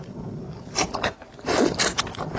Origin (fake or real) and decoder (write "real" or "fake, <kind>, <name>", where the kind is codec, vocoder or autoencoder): real